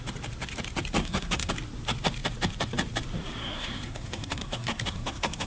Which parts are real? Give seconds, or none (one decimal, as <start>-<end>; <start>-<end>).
0.0-1.0; 1.5-3.4